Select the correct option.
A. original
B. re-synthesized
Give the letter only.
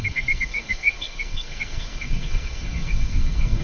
B